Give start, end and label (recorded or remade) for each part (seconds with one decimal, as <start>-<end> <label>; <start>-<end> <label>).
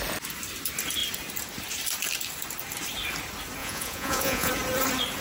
0.0-3.6 recorded; 3.6-4.5 remade; 4.5-5.2 recorded